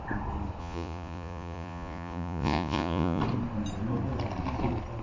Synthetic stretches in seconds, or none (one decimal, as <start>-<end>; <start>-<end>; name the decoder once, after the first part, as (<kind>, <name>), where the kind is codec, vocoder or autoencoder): 0.6-3.2 (vocoder, Vocos)